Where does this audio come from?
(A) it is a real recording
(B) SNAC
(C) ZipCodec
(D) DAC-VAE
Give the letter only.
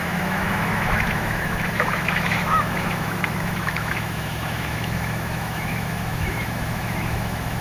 D